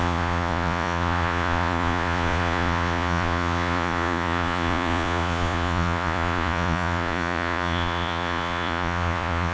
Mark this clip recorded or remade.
remade